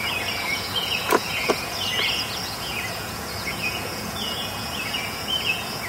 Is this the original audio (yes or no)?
no